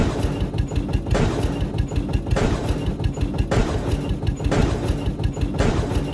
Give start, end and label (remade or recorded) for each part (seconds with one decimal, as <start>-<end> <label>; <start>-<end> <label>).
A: 0.0-6.1 recorded